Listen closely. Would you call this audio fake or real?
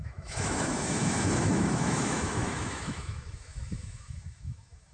fake